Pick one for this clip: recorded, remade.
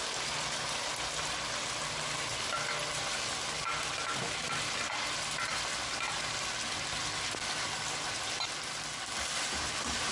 recorded